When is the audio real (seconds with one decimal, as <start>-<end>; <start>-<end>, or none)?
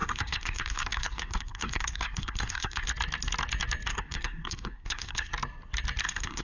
2.9-3.9; 5.3-6.0